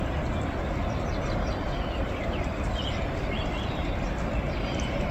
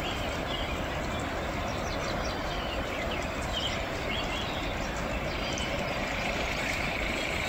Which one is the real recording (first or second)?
first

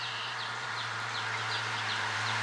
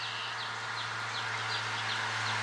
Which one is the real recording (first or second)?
second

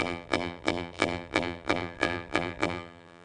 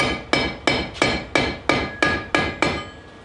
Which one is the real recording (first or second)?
second